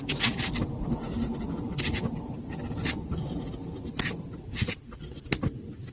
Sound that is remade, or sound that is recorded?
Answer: recorded